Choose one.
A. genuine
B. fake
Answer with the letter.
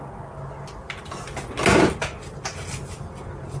A